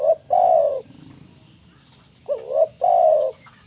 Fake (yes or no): no